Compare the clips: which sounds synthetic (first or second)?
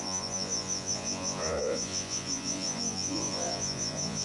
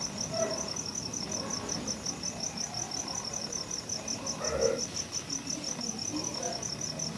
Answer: first